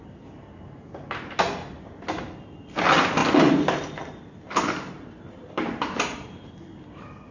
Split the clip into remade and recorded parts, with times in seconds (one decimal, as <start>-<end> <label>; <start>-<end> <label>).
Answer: 0.0-3.2 recorded; 3.2-6.5 remade; 6.5-7.3 recorded